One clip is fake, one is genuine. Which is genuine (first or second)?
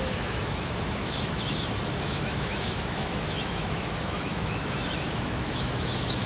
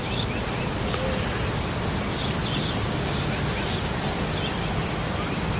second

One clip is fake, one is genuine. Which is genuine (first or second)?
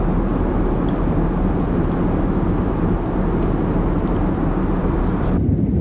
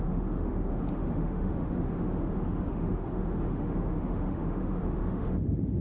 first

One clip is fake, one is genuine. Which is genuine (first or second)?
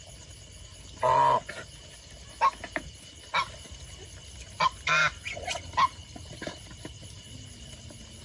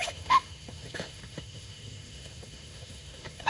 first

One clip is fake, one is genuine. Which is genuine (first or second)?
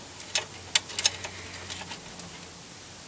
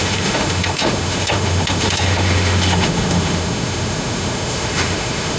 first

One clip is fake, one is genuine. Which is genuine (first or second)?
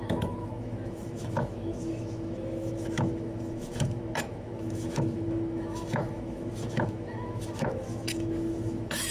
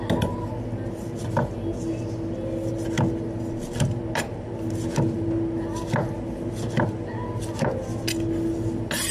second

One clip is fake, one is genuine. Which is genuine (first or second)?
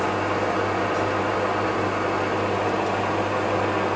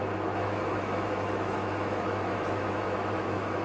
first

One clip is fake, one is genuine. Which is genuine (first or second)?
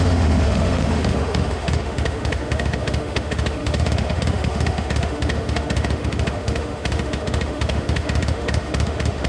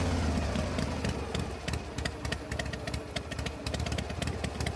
second